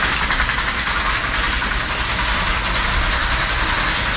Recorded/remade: recorded